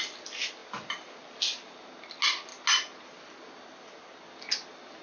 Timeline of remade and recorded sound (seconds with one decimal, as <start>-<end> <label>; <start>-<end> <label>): 0.0-5.0 recorded